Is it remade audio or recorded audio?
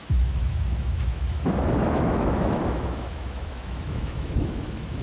remade